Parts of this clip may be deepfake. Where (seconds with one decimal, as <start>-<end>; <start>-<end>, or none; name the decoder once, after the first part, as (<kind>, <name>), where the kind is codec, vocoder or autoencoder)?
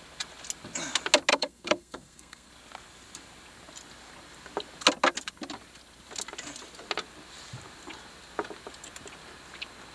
1.3-2.5 (codec, SNAC)